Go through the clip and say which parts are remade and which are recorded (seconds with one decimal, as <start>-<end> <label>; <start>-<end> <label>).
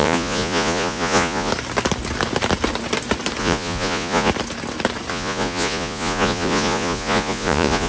0.0-1.5 remade; 1.5-3.4 recorded; 3.4-4.3 remade; 4.3-5.1 recorded; 5.1-7.9 remade